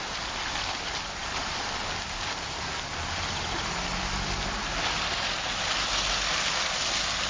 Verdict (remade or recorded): recorded